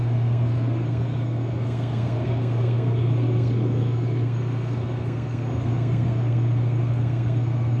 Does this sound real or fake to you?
fake